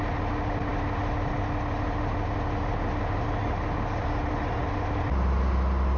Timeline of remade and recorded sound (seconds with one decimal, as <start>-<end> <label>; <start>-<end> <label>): 0.0-6.0 recorded